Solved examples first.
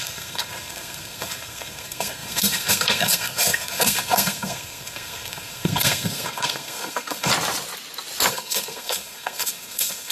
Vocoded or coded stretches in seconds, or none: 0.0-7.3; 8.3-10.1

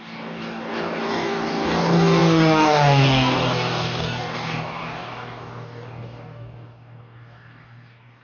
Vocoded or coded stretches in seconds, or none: 0.0-8.2

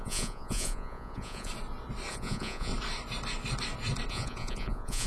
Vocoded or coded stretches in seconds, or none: 0.0-1.5; 2.1-2.7; 4.1-5.1

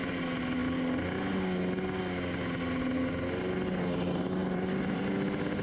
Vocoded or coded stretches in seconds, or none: 4.4-5.0